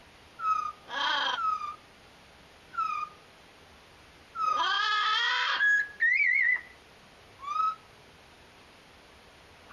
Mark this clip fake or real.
real